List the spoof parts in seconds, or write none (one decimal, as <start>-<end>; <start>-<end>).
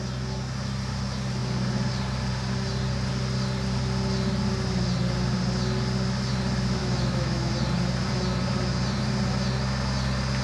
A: 6.8-7.5